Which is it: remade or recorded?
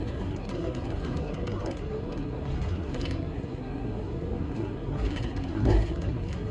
remade